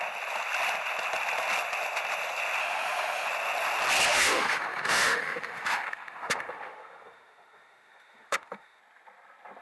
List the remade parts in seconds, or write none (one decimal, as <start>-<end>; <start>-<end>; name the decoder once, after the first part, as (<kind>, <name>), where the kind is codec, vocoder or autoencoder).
2.6-3.3 (autoencoder, DAC-VAE); 4.1-8.8